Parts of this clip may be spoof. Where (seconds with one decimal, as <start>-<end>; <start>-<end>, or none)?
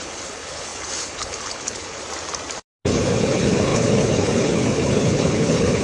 0.0-2.0; 2.9-5.8